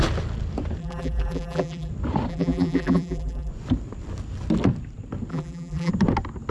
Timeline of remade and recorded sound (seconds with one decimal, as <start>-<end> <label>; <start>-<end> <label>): 0.0-0.8 recorded; 0.8-1.9 remade; 1.9-2.3 recorded; 2.3-3.5 remade; 3.5-5.3 recorded; 5.3-5.9 remade; 5.9-6.5 recorded

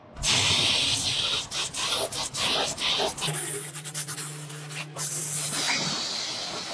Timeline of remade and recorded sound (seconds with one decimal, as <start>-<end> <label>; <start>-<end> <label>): 0.0-6.7 recorded

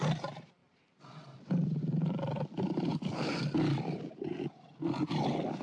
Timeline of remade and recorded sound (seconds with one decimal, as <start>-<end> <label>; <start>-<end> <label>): 0.0-5.6 remade

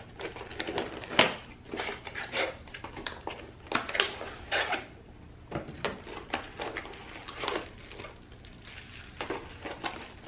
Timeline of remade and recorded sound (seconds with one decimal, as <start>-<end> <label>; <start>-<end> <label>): 0.0-10.3 recorded